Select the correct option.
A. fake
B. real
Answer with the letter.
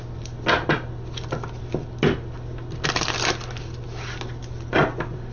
B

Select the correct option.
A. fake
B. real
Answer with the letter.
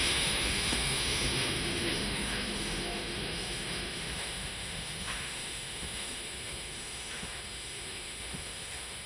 A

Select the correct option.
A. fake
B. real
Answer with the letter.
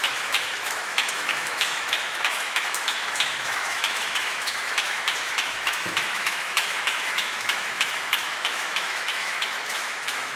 A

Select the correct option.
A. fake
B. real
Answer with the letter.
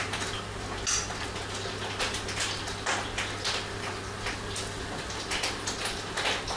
B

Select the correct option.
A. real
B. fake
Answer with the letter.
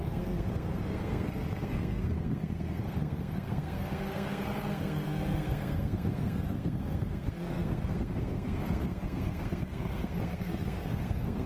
B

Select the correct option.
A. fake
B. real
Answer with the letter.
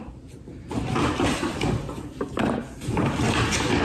B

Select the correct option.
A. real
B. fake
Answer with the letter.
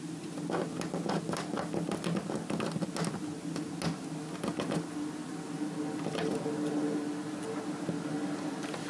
A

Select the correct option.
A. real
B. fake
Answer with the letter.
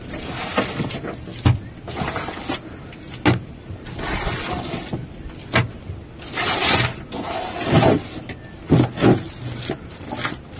A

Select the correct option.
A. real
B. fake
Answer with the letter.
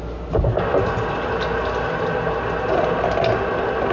A